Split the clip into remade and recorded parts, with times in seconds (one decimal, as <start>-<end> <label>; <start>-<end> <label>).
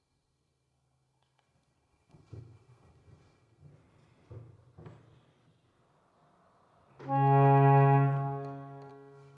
0.0-3.7 remade; 3.7-8.9 recorded; 8.9-9.4 remade